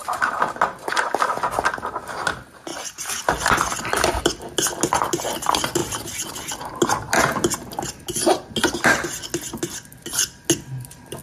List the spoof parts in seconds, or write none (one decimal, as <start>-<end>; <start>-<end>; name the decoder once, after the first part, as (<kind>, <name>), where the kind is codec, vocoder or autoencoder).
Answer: none